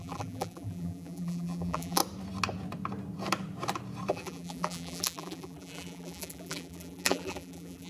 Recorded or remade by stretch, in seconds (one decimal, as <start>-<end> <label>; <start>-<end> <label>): 0.0-2.0 remade; 2.0-4.1 recorded; 4.1-7.9 remade